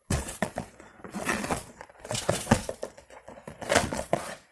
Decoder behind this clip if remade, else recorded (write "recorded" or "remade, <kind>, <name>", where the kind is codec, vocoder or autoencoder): remade, vocoder, Vocos